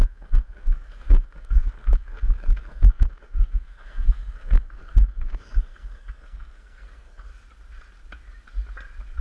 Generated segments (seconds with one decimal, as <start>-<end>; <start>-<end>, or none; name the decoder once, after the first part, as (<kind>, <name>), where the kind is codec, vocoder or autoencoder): 0.0-7.3 (codec, SNAC)